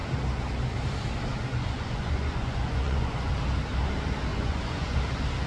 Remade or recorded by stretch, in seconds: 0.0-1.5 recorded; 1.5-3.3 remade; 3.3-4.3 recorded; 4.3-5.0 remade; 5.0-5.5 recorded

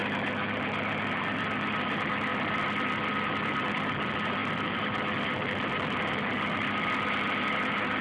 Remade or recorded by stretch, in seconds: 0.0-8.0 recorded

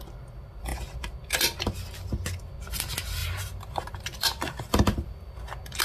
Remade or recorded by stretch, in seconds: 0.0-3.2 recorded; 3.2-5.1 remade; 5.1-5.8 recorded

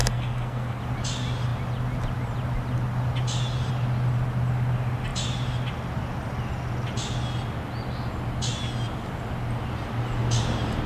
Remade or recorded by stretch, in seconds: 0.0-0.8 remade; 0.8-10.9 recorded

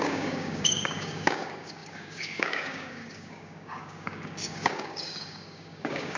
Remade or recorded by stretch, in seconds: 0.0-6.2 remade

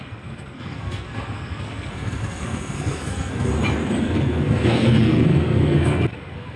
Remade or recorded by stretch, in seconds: 0.0-3.5 remade; 3.5-4.0 recorded; 4.0-6.6 remade